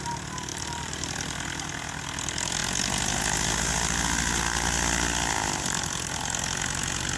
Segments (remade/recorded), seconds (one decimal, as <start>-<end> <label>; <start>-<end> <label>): 0.0-0.5 recorded; 0.5-1.1 remade; 1.1-7.2 recorded

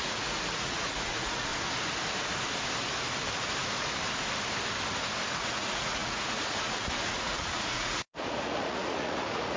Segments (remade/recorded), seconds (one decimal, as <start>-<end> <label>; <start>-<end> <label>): 0.0-1.5 remade; 1.5-5.3 recorded; 5.3-9.6 remade

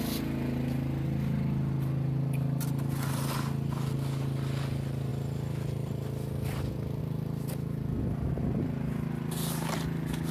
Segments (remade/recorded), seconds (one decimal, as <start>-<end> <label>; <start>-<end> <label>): 0.0-10.3 recorded

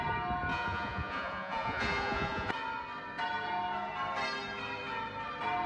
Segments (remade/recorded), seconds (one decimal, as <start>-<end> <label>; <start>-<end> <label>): 0.0-0.5 recorded; 0.5-2.5 remade; 2.5-5.7 recorded